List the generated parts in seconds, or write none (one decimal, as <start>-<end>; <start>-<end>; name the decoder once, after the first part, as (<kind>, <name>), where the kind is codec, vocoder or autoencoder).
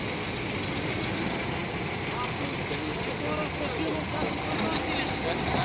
none